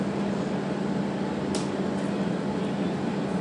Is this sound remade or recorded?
recorded